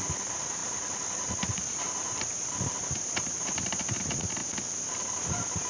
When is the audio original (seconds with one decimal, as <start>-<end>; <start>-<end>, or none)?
4.4-4.9